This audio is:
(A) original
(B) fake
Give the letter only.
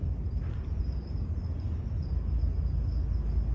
A